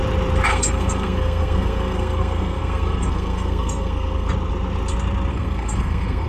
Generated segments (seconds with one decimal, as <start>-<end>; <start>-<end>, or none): 0.5-4.3; 5.3-6.3